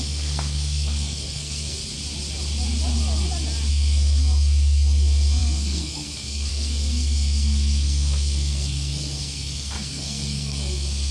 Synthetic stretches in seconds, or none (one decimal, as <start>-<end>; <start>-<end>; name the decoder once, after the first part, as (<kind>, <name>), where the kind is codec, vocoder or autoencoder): 0.0-1.8 (codec, SNAC); 3.7-11.1